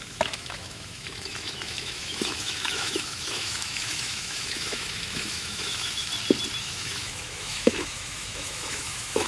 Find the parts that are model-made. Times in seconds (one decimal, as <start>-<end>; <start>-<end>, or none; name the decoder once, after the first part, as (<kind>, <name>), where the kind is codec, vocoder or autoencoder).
0.0-6.1 (autoencoder, DAC-VAE); 6.6-9.3